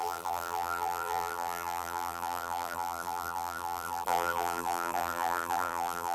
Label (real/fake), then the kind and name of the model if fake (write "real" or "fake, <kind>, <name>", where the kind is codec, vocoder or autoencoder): fake, vocoder, BigVGAN v2